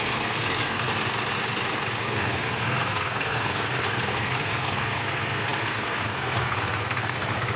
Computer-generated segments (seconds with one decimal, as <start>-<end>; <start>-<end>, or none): 0.0-0.9; 2.0-7.6